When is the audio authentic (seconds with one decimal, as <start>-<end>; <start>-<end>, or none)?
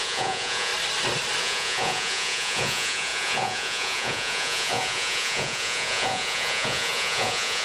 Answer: 0.7-1.4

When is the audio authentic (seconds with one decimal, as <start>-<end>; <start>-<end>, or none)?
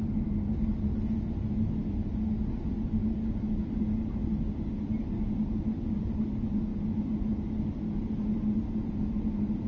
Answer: 0.0-9.7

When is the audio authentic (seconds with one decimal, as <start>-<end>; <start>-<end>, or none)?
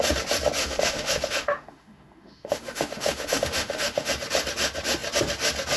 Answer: 0.0-0.6; 4.1-5.8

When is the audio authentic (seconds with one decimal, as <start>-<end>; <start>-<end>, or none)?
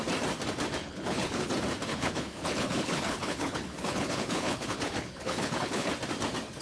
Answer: 0.0-0.8; 1.5-1.9; 5.9-6.6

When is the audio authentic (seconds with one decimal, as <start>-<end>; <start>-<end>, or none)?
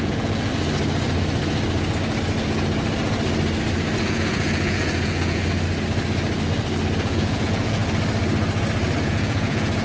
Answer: 0.5-4.0; 5.4-7.0; 7.8-9.0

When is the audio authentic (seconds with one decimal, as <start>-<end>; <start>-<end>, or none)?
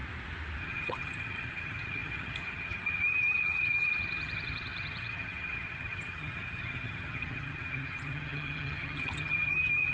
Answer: 0.0-0.6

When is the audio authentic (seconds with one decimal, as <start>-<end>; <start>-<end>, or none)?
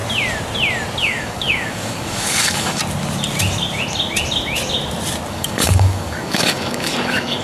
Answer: 0.0-1.0; 2.8-5.3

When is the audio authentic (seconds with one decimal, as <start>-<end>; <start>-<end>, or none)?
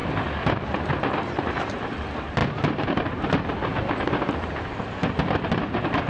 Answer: 0.0-6.1